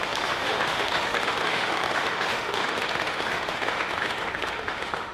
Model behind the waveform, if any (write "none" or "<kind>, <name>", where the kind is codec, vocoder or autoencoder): autoencoder, DAC-VAE